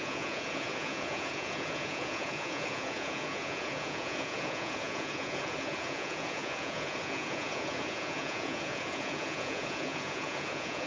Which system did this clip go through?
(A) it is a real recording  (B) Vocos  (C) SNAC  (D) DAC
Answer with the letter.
B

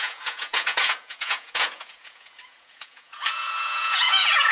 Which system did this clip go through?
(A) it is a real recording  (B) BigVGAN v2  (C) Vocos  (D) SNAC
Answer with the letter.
C